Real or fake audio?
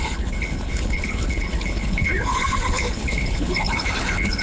fake